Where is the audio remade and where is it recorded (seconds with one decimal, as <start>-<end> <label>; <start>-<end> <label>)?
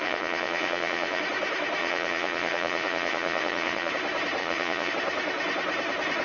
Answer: 0.0-1.2 remade; 1.2-1.8 recorded; 1.8-3.9 remade; 3.9-4.4 recorded; 4.4-4.9 remade; 4.9-6.2 recorded